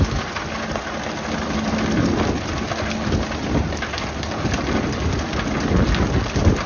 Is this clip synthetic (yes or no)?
no